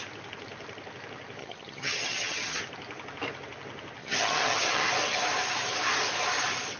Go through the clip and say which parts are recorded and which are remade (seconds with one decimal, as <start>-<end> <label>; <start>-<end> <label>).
0.0-1.4 recorded; 1.4-2.6 remade; 2.6-4.0 recorded; 4.0-4.9 remade; 4.9-6.8 recorded